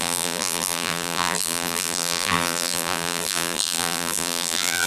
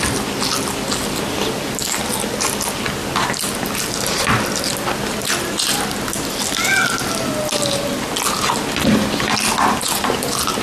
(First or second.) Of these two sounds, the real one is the second